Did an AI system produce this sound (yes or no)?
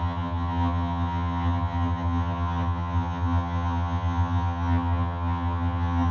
yes